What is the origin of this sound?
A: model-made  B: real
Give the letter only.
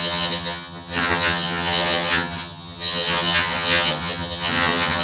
A